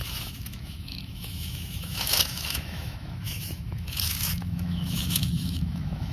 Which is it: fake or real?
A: fake